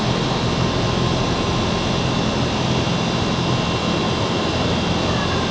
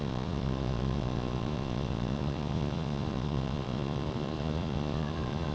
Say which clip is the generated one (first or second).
second